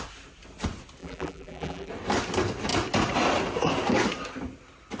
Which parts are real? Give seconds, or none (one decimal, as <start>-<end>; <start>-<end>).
0.0-1.0; 1.9-5.0